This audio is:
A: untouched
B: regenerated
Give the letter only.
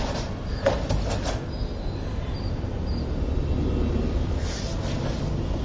A